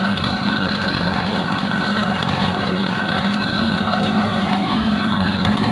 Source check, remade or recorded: remade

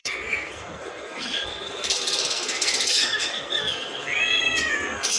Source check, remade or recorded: remade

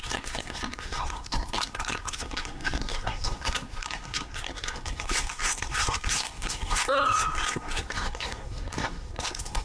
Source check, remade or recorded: remade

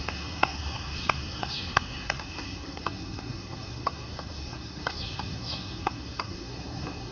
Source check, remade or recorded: remade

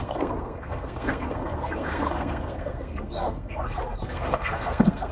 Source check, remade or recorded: remade